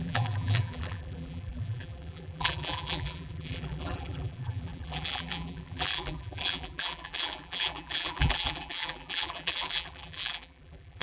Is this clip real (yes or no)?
no